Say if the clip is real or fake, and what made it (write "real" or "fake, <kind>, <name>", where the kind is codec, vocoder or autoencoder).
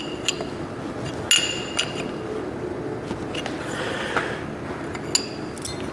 real